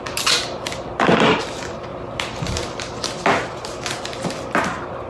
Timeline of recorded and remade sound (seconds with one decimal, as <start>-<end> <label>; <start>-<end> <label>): 0.0-5.1 recorded